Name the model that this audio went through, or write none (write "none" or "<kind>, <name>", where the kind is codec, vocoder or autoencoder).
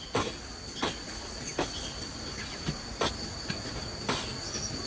none